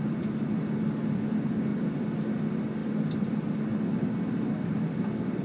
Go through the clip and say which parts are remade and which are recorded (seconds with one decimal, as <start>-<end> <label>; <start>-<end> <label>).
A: 0.0-5.4 recorded